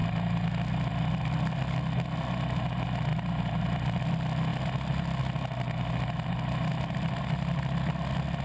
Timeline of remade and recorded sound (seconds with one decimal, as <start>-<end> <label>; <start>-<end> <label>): 0.0-8.4 recorded